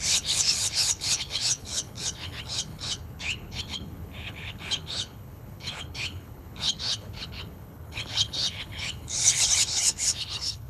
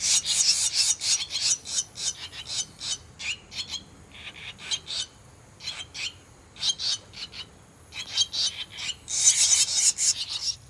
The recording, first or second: second